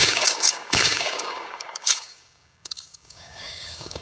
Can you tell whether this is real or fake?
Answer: fake